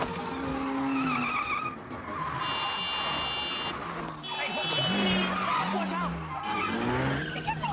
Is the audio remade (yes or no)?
no